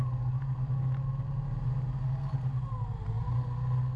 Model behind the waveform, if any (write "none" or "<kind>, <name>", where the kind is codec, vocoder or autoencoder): none